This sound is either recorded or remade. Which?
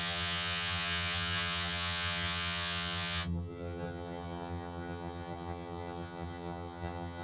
remade